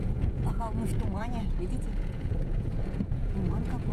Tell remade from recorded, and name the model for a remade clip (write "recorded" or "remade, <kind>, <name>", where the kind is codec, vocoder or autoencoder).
remade, vocoder, Vocos